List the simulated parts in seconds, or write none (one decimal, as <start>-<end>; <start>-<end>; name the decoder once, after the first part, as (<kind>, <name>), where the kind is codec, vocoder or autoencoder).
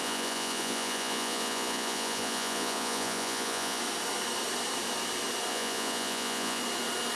0.0-3.8 (vocoder, Vocos); 5.5-6.6